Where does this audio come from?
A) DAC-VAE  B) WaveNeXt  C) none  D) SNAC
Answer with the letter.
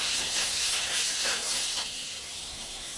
D